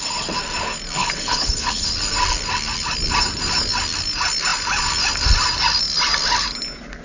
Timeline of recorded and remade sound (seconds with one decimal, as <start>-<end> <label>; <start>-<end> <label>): 0.0-1.0 recorded; 1.0-1.9 remade; 1.9-7.0 recorded